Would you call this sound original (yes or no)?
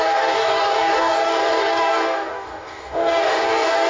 no